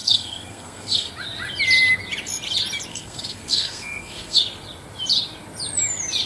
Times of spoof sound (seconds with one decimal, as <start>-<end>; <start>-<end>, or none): 0.0-1.1; 2.9-4.4